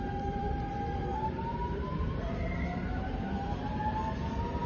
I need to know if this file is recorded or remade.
remade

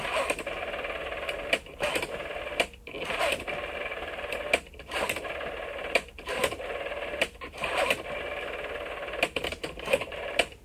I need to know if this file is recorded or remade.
recorded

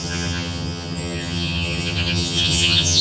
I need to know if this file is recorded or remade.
remade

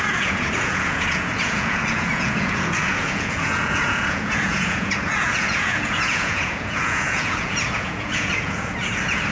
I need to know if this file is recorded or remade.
remade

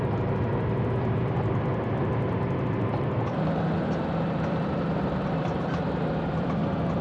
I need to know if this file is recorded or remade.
remade